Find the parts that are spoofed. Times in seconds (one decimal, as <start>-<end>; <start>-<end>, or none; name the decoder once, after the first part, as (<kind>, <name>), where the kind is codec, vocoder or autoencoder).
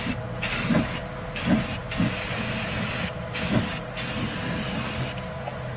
none